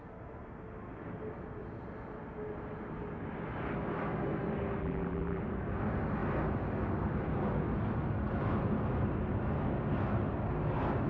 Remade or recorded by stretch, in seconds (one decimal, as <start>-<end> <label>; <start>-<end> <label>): 0.0-4.8 recorded; 4.8-5.4 remade; 5.4-11.1 recorded